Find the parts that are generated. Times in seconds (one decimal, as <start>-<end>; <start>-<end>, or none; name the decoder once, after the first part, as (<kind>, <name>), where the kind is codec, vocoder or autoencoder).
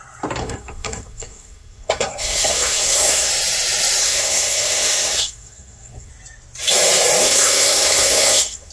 0.4-3.3 (codec, SNAC); 4.0-6.1; 7.2-8.7